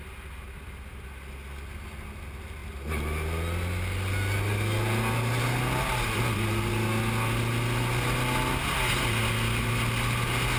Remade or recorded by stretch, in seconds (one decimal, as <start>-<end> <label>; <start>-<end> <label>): 0.0-10.6 recorded